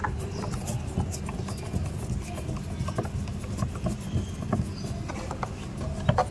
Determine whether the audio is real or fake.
real